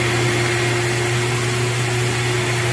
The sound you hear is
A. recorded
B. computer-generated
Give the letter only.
A